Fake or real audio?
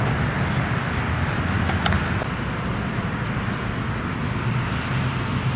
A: real